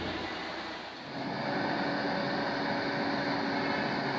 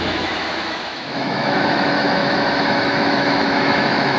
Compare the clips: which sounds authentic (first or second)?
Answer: first